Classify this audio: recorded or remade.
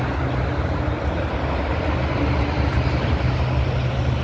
recorded